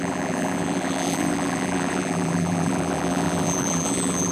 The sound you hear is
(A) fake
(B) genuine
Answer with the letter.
A